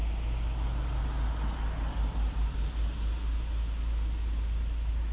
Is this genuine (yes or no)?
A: yes